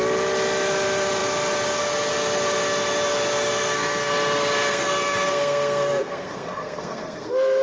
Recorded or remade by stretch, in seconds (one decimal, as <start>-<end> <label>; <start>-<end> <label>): 0.0-3.5 recorded; 3.5-4.1 remade; 4.1-4.7 recorded; 4.7-7.6 remade